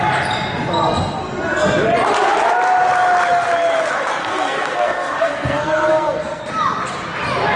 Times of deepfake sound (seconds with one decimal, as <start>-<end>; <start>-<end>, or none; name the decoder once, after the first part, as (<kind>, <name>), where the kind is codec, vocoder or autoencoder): 4.2-6.4 (codec, SNAC)